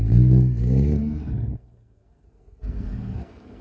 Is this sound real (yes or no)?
no